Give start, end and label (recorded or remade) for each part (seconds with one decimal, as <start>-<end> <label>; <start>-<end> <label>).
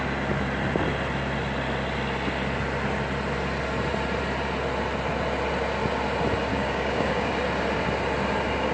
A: 0.0-6.5 recorded; 6.5-7.3 remade; 7.3-8.7 recorded